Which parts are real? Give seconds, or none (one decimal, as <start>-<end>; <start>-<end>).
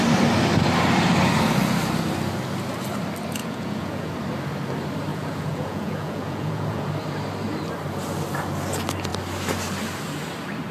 0.0-3.4; 4.1-5.1; 6.9-10.7